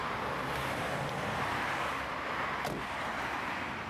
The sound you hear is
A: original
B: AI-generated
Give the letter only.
A